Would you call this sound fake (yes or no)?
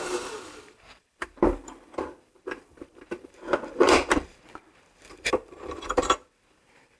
yes